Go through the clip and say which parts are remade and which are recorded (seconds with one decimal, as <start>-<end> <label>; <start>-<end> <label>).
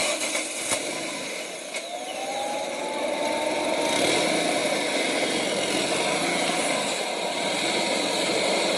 0.0-8.8 recorded